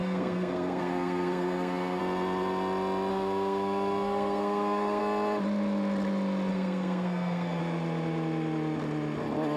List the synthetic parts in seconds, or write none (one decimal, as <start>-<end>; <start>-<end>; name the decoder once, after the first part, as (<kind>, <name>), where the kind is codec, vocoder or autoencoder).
0.0-2.0 (codec, SNAC); 3.1-5.0; 6.5-7.6